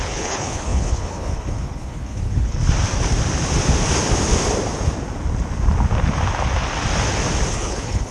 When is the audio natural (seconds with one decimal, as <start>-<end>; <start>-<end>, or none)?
2.6-7.5